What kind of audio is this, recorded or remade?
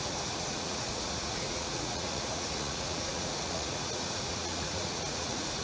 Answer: remade